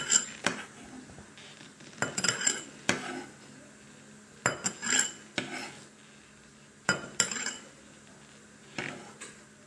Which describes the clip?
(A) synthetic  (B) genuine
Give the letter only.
B